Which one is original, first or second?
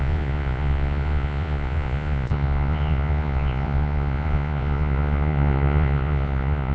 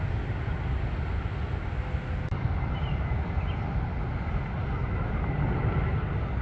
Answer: second